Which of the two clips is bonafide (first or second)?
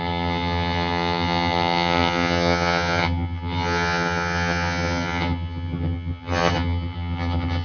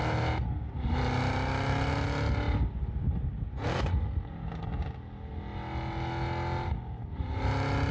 second